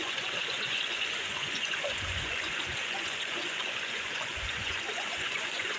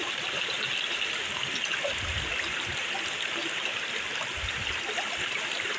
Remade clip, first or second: first